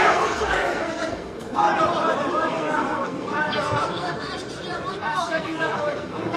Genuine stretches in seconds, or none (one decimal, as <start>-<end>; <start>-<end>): 1.7-2.3; 4.3-4.9